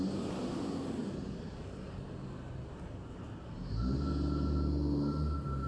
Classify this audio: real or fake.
real